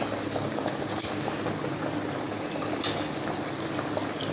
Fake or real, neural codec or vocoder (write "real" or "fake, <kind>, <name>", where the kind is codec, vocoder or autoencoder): real